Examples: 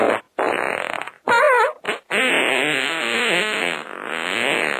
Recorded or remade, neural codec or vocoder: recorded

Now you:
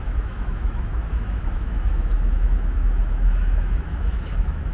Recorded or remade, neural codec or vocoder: remade, autoencoder, DAC-VAE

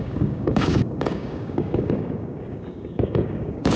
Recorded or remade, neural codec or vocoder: remade, codec, DAC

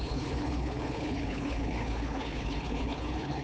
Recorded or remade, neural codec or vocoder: remade, codec, HILCodec